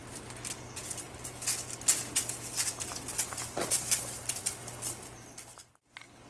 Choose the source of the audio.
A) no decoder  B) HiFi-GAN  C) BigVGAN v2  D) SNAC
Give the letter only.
A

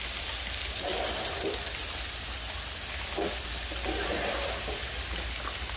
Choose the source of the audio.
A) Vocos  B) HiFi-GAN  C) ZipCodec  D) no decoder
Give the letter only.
D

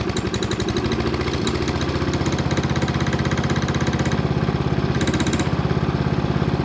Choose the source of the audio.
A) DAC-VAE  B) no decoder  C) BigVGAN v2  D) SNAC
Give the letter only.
B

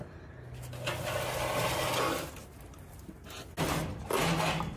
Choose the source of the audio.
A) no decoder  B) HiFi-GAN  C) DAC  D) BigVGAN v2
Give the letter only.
A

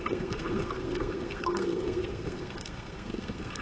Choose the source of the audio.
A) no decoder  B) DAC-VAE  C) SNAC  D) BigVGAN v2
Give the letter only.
C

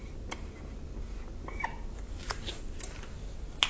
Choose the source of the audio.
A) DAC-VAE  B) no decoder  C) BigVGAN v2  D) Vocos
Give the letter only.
B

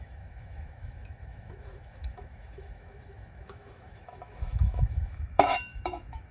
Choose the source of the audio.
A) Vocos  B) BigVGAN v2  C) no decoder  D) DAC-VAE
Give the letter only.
D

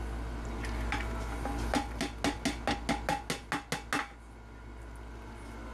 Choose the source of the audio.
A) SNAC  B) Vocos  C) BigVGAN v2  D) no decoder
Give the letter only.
D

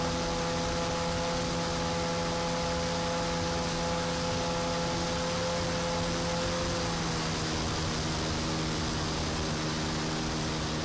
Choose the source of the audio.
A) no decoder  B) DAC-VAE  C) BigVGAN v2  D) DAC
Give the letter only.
A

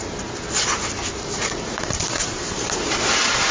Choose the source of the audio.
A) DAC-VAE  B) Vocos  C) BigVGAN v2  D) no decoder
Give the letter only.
C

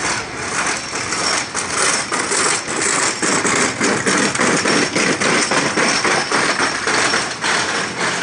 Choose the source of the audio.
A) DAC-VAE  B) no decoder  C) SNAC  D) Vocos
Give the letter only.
B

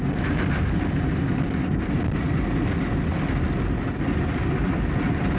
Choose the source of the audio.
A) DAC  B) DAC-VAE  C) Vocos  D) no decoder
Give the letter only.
D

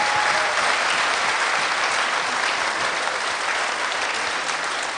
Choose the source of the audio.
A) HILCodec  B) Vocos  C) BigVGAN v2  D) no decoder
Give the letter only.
D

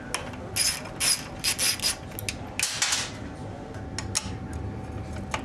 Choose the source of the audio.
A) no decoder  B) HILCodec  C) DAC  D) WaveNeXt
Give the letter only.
A